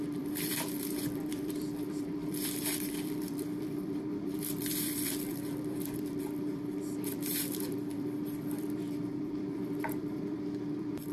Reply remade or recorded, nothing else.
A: remade